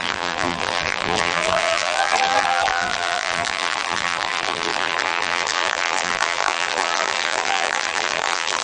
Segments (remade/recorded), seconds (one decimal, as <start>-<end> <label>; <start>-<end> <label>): 0.0-8.6 remade